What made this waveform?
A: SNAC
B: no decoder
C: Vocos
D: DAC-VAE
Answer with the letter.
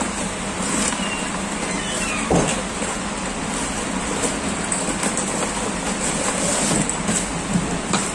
B